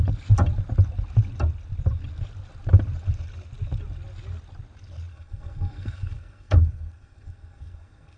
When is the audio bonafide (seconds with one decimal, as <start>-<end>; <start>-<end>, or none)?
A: 0.0-5.1